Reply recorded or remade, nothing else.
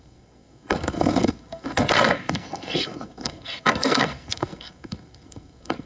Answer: remade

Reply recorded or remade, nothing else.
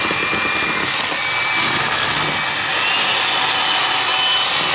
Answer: recorded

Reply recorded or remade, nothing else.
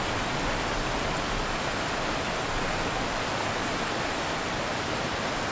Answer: recorded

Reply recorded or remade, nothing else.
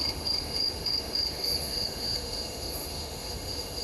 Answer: remade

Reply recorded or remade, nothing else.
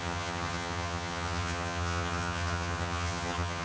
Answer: remade